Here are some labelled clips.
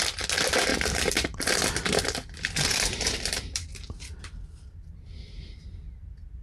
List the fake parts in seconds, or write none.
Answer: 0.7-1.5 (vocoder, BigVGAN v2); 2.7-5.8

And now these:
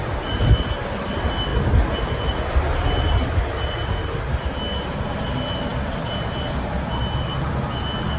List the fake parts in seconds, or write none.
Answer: none

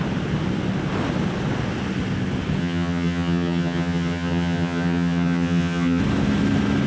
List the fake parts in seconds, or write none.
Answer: 2.6-6.0 (vocoder, HiFi-GAN)